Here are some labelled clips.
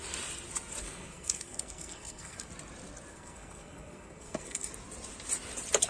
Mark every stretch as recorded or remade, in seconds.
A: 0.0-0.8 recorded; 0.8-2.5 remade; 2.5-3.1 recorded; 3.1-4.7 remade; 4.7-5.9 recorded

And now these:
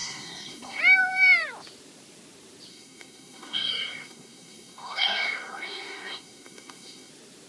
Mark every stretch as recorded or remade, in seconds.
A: 0.0-0.8 remade; 0.8-2.7 recorded; 2.7-7.1 remade; 7.1-7.5 recorded